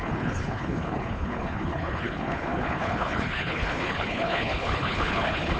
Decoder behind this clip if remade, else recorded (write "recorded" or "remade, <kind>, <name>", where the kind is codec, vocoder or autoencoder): remade, codec, HILCodec